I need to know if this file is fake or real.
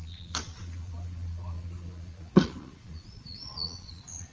fake